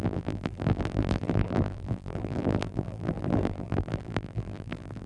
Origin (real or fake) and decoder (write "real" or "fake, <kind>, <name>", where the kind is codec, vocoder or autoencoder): fake, vocoder, BigVGAN v2